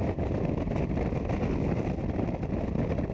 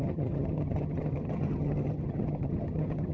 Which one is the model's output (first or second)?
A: second